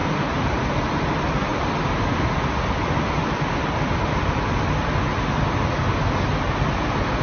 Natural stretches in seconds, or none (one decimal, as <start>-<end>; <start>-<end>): 0.0-7.2